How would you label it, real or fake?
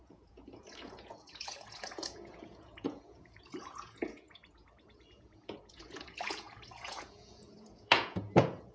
fake